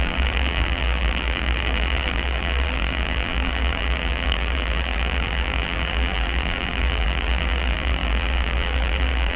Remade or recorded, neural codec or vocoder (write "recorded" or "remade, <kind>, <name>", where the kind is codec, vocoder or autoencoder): remade, vocoder, BigVGAN v2